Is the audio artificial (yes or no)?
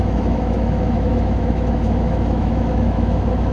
yes